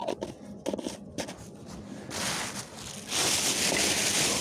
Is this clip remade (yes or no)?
no